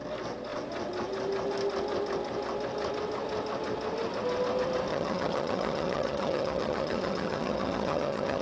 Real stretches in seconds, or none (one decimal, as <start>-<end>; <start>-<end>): 0.0-4.9